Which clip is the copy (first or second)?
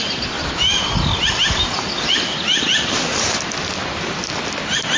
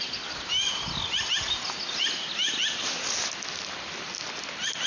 first